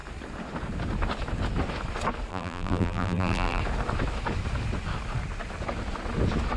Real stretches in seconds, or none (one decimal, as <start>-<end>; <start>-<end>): 0.0-2.3; 3.6-6.6